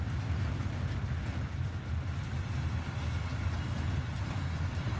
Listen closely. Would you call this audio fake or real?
real